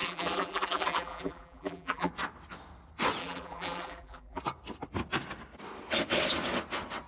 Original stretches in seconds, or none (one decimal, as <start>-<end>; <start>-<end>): 2.1-3.2; 4.4-7.1

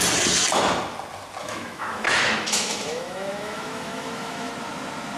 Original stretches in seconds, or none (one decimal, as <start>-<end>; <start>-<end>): 0.0-1.4; 4.5-5.2

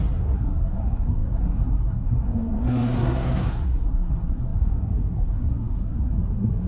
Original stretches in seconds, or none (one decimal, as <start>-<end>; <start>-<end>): none